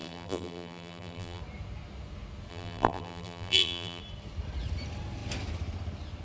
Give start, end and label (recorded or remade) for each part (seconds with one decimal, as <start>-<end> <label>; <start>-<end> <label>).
0.0-1.4 remade; 1.4-2.5 recorded; 2.5-4.0 remade; 4.0-6.2 recorded